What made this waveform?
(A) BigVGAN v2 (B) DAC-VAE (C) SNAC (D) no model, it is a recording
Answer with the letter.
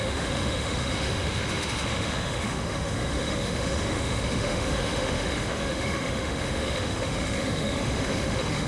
B